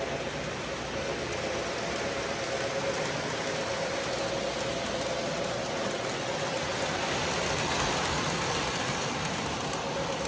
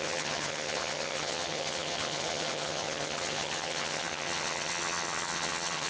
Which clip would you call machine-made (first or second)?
second